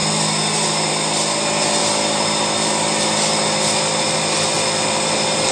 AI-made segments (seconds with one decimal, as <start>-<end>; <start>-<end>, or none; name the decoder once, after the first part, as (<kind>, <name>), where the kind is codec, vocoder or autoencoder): none